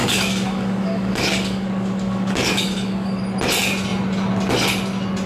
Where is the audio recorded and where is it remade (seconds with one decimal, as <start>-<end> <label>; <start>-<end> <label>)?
0.0-3.2 remade; 3.2-5.3 recorded